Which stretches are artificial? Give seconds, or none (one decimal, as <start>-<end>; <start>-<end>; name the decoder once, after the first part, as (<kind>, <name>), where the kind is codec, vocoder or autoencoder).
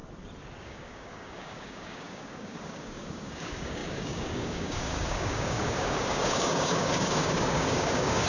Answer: 0.6-8.3 (codec, DAC)